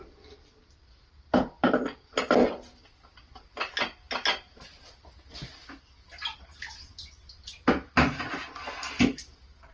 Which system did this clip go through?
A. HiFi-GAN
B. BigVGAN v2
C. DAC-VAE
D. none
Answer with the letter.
D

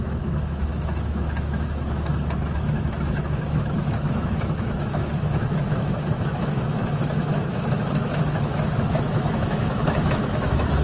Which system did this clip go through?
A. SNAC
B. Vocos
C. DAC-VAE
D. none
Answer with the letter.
C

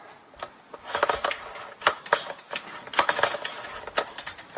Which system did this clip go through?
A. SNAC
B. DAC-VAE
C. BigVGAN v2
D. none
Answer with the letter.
D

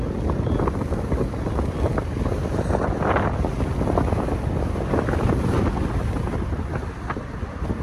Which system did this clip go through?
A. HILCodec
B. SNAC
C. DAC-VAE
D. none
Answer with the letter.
D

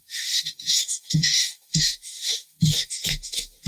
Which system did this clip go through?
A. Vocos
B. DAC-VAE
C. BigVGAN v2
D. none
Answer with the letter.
B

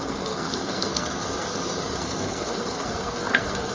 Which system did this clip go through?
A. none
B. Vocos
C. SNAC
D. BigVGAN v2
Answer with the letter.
C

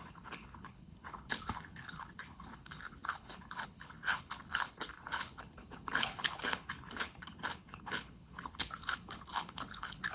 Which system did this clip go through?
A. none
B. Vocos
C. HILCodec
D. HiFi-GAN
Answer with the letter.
C